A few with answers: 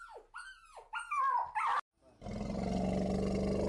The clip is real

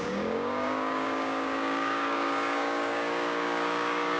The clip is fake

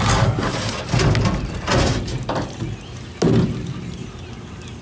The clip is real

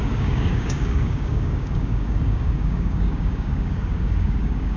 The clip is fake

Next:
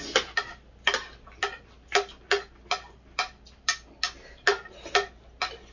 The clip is real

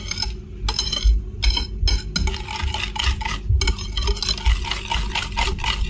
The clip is real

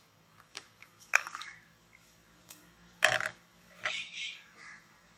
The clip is fake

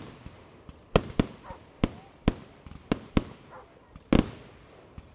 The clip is real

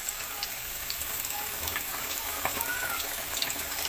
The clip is fake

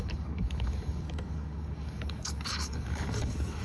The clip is fake